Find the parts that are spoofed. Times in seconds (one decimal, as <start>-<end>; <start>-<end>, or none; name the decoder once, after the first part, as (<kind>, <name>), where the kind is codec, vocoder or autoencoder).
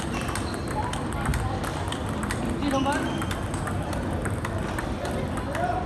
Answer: 0.0-1.3 (vocoder, BigVGAN v2); 1.9-5.9